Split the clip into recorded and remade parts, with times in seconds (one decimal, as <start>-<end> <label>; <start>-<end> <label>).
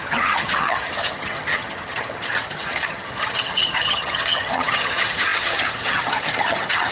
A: 0.0-6.9 remade